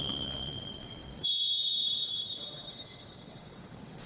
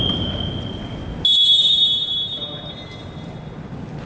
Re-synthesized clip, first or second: first